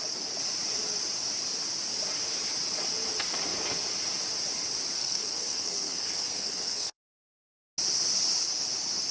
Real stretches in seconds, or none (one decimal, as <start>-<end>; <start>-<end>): 0.0-5.0; 7.6-9.1

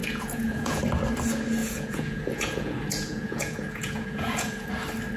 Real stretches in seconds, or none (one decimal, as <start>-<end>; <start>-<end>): 0.8-1.6; 4.7-5.2

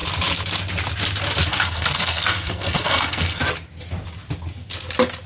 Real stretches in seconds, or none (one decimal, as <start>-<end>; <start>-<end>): 0.0-1.5; 3.4-5.3